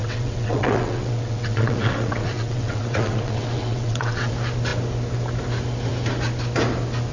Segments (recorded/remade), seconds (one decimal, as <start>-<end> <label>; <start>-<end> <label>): 0.0-4.3 remade; 4.3-7.1 recorded